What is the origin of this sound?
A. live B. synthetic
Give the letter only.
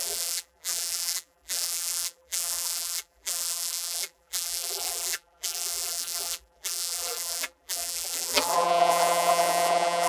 B